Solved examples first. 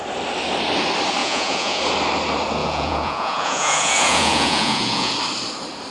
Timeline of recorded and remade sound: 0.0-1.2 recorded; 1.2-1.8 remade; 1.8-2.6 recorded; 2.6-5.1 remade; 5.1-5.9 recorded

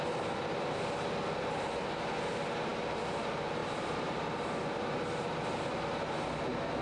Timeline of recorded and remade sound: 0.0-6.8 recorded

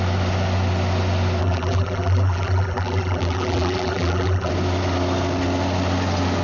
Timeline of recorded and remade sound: 0.0-1.4 recorded; 1.4-4.5 remade; 4.5-6.4 recorded

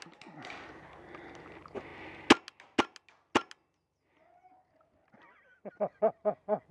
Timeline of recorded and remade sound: 0.0-6.7 recorded

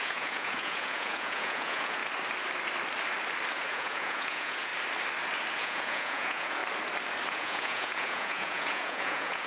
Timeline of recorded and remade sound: 0.0-2.0 remade; 2.0-3.5 recorded; 3.5-4.7 remade; 4.7-5.5 recorded; 5.5-6.6 remade; 6.6-7.3 recorded; 7.3-9.5 remade

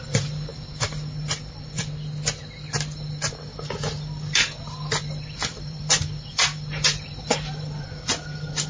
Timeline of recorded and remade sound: 0.0-0.5 remade; 0.5-5.0 recorded; 5.0-8.7 remade

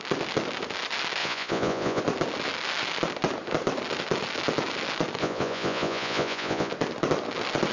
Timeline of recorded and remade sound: 0.0-1.2 recorded; 1.2-2.0 remade; 2.0-5.2 recorded; 5.2-6.7 remade; 6.7-7.7 recorded

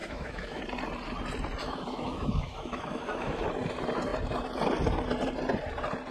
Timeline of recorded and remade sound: 0.0-0.6 remade; 0.6-1.6 recorded; 1.6-3.4 remade; 3.4-6.1 recorded